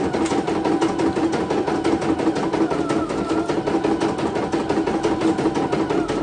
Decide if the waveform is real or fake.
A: real